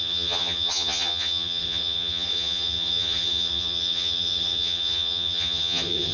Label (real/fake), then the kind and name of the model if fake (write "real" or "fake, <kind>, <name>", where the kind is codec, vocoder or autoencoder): fake, vocoder, HiFi-GAN